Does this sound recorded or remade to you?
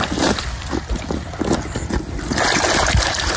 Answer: recorded